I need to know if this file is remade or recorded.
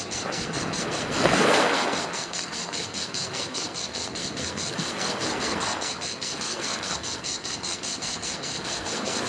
remade